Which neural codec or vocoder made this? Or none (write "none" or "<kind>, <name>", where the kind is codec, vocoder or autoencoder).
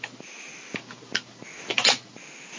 none